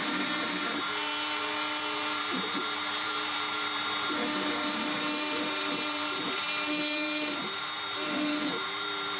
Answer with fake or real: fake